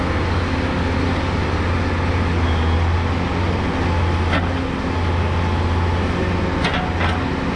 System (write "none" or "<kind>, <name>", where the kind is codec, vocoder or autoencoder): none